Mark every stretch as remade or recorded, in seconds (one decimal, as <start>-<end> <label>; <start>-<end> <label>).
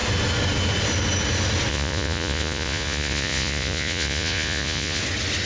0.0-1.7 recorded; 1.7-5.0 remade; 5.0-5.5 recorded